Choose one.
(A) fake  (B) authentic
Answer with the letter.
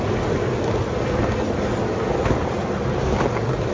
B